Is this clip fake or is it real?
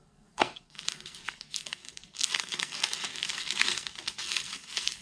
fake